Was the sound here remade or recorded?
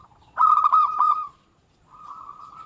remade